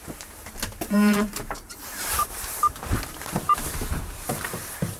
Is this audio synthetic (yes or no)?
yes